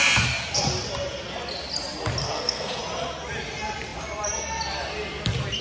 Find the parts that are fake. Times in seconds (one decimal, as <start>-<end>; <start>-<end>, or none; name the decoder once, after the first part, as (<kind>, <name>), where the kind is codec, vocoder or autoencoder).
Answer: 2.2-2.8 (codec, SNAC)